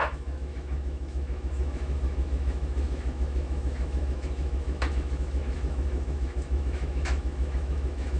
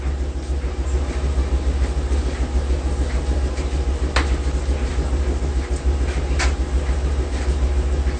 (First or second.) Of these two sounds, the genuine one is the second